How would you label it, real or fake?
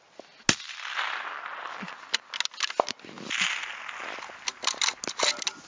real